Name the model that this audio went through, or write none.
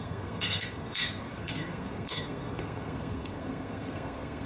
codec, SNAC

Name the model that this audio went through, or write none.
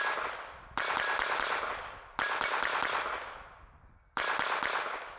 none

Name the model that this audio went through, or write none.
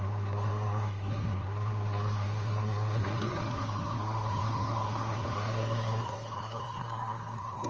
codec, SNAC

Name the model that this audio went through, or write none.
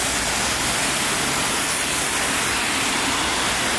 none